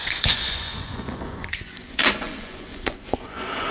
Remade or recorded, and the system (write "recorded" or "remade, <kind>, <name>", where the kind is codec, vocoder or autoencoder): remade, vocoder, Vocos